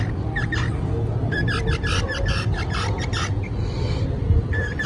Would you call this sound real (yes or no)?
yes